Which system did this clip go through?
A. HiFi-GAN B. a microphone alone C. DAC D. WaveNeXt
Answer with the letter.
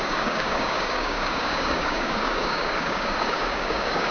C